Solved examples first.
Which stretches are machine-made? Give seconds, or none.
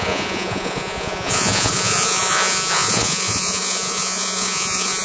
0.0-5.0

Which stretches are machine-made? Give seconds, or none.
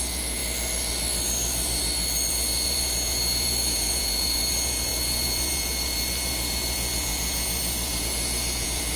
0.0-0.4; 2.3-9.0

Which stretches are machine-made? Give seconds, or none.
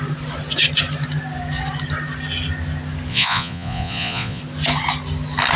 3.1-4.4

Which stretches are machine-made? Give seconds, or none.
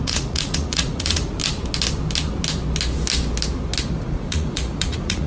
0.0-1.4; 3.8-5.3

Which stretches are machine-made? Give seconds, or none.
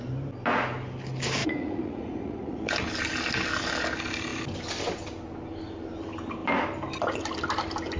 1.4-2.7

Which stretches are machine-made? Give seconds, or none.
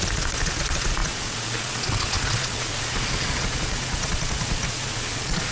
0.0-5.5